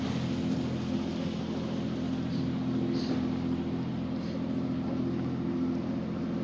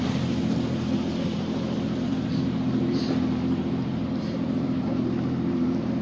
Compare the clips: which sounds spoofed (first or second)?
second